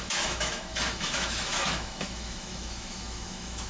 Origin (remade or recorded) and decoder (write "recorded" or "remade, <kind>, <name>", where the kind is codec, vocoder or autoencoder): remade, autoencoder, DAC-VAE